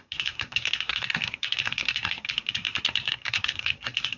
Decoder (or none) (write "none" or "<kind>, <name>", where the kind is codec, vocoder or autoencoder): codec, SNAC